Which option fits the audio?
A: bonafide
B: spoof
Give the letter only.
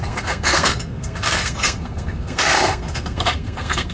B